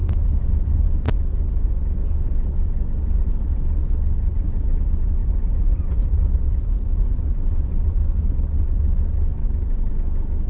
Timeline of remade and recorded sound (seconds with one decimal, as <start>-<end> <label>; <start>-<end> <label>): 0.0-5.2 recorded; 5.2-6.6 remade; 6.6-9.4 recorded; 9.4-9.9 remade; 9.9-10.5 recorded